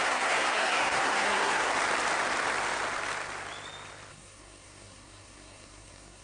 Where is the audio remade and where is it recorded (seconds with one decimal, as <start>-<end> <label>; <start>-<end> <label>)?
0.0-1.7 remade; 1.7-4.1 recorded; 4.1-6.2 remade